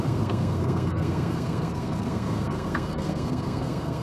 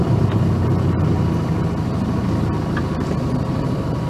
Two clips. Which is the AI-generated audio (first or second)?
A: first